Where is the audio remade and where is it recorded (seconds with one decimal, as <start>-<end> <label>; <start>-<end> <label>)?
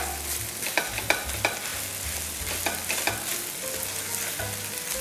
0.0-5.0 recorded